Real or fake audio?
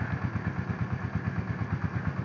real